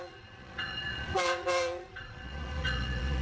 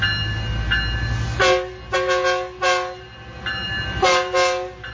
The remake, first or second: first